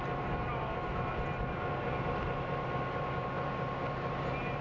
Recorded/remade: recorded